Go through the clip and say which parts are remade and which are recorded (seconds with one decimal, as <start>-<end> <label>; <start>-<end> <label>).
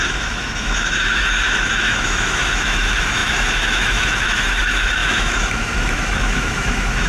0.0-7.1 remade